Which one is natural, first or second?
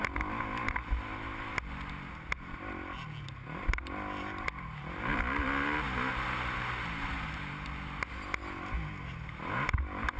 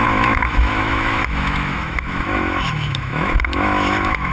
first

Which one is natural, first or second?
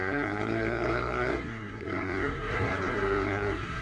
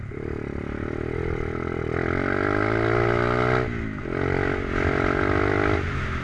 second